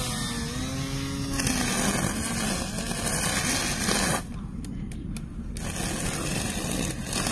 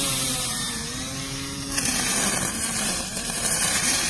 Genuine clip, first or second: first